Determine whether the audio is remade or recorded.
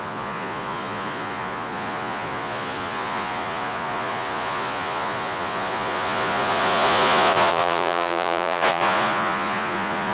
remade